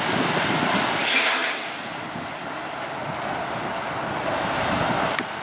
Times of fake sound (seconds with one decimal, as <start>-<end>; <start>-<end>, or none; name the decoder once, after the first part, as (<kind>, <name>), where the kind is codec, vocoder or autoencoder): none